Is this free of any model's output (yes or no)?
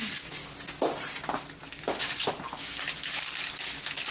yes